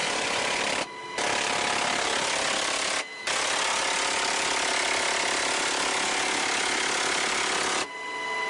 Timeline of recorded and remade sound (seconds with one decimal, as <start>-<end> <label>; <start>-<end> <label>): 0.0-0.6 remade; 0.6-8.5 recorded